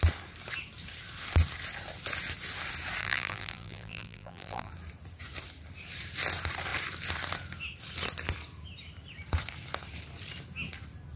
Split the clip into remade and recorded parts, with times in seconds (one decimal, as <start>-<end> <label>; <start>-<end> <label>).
0.0-3.0 recorded; 3.0-4.7 remade; 4.7-11.2 recorded